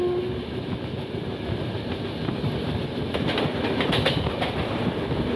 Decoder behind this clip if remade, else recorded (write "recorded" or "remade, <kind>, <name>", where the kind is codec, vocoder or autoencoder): recorded